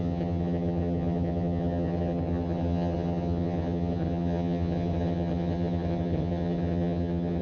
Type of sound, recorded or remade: remade